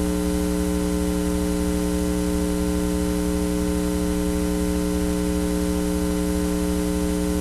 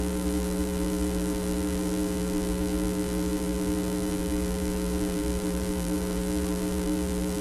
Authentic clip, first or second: first